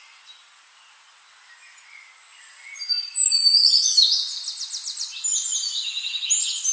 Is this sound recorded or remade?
recorded